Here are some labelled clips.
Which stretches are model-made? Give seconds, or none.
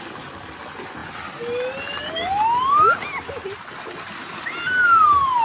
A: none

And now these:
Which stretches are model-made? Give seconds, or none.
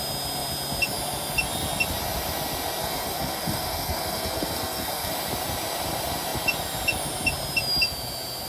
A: 2.8-5.1 (codec, SNAC)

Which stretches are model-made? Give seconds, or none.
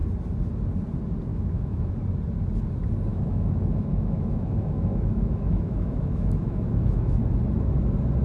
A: 1.3-1.9 (autoencoder, DAC-VAE); 3.1-7.2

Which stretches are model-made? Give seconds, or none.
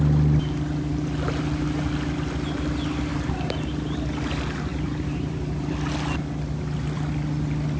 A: 3.1-3.7 (vocoder, BigVGAN v2); 4.7-5.7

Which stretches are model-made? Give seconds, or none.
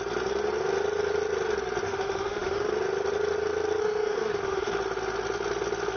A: 1.8-2.7 (autoencoder, DAC-VAE); 3.8-4.7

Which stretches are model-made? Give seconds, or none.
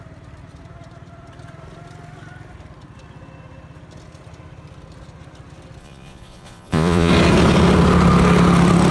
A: 5.8-7.1 (vocoder, Vocos)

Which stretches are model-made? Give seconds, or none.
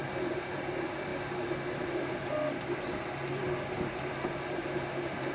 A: none